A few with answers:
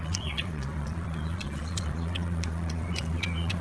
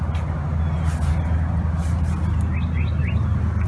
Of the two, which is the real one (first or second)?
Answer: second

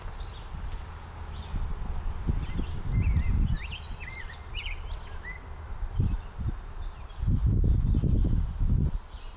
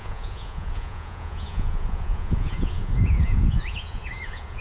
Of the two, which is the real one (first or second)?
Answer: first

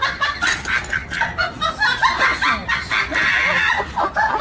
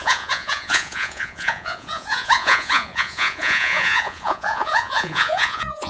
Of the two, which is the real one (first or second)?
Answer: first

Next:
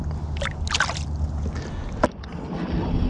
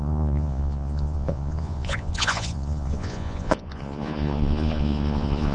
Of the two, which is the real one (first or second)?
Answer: first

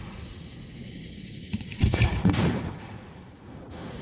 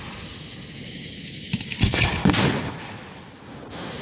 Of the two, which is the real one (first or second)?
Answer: second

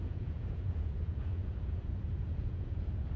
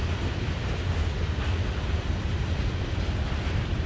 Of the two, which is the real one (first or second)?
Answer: second